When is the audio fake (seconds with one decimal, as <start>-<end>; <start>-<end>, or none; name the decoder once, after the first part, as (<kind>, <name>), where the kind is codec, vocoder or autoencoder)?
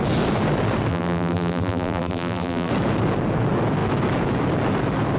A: 0.9-2.7 (vocoder, BigVGAN v2)